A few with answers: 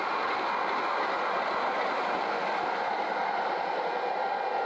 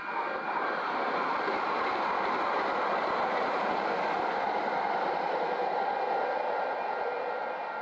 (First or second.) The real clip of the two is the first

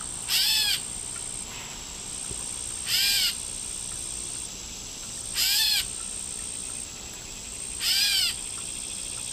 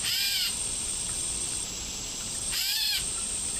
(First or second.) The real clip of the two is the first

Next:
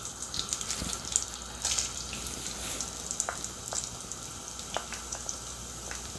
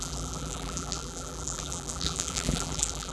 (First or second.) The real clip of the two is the first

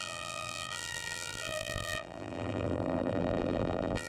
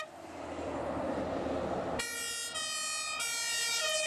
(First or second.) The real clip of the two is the second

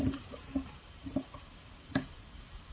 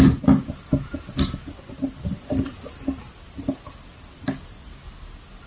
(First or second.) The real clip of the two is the second